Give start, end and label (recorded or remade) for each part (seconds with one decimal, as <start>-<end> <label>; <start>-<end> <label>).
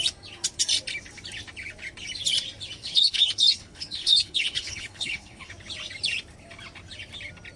0.0-2.8 recorded; 2.8-5.5 remade; 5.5-7.6 recorded